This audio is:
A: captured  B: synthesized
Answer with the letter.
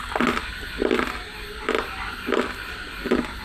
A